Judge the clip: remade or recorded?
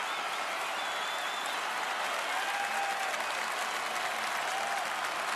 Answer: recorded